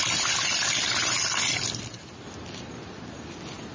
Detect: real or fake real